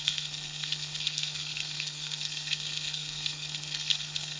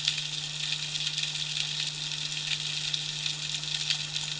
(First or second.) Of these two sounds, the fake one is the first